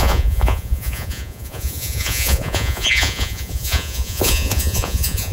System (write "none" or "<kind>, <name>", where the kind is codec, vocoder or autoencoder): vocoder, Vocos